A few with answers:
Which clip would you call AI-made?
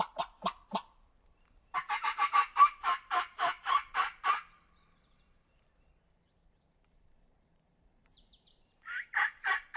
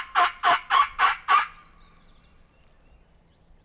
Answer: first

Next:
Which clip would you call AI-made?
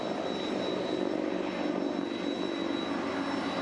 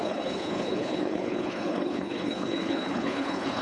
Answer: second